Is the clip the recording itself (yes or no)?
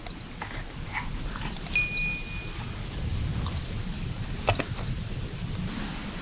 yes